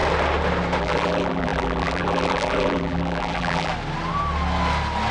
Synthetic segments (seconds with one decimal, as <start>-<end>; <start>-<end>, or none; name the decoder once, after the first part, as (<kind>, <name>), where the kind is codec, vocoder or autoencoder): 0.8-3.7 (vocoder, BigVGAN v2)